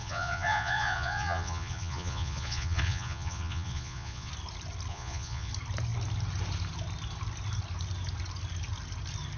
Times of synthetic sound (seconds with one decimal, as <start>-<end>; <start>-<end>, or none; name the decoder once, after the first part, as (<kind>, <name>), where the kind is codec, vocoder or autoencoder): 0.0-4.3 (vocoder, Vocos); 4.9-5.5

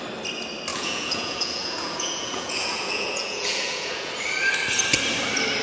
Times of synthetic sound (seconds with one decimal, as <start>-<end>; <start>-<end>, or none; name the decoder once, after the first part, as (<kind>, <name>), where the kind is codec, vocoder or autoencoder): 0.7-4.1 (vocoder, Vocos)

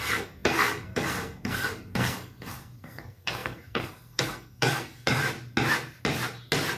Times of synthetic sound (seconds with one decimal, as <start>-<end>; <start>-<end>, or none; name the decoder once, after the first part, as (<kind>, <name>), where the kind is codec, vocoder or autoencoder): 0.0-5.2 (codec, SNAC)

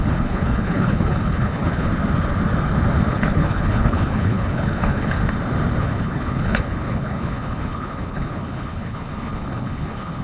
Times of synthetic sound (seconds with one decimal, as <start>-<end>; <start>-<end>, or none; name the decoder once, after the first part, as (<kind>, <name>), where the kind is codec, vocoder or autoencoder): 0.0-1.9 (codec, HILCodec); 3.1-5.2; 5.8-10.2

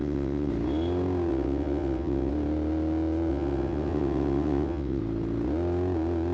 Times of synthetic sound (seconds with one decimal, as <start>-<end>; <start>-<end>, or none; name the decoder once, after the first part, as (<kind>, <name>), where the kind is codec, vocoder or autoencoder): 0.0-0.5 (vocoder, WaveNeXt); 1.3-2.3; 3.3-5.0

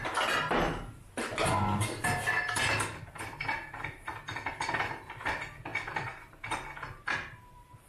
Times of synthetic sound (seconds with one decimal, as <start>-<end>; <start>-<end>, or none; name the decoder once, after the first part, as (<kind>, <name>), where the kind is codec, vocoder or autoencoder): none

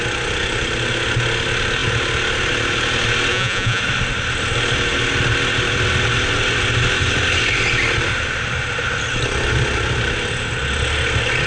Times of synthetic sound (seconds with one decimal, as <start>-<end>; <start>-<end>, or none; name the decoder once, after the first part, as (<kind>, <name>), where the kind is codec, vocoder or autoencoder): 3.3-3.8 (vocoder, Vocos)